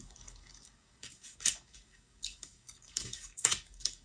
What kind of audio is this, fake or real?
fake